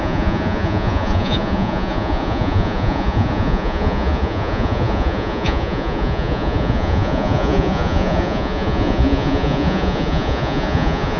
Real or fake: fake